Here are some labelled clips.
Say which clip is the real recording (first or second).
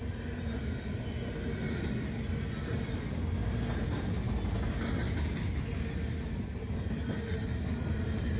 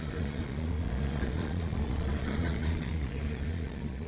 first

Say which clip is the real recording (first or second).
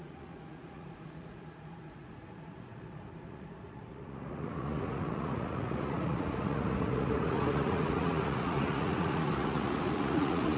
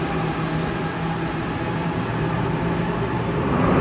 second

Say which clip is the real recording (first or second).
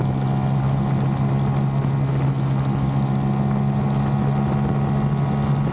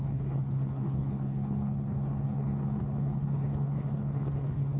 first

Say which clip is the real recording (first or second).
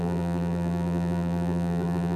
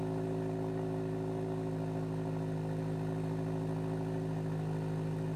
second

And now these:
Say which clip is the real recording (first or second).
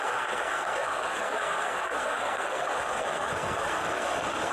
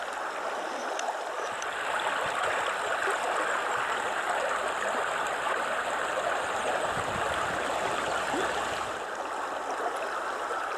second